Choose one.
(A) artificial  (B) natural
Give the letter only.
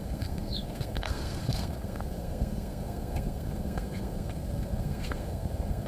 A